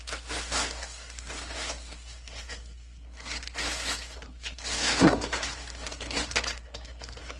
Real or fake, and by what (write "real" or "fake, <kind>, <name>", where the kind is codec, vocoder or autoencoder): fake, codec, SNAC